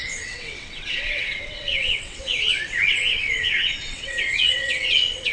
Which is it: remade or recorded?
remade